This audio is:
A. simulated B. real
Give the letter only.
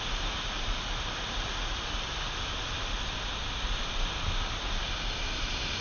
B